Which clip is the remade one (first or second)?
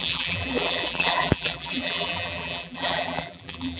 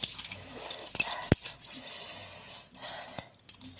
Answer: first